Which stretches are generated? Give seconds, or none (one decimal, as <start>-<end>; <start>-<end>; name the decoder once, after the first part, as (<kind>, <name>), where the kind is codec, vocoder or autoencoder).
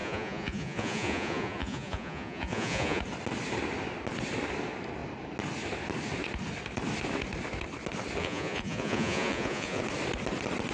0.0-3.0 (vocoder, Vocos); 8.2-9.8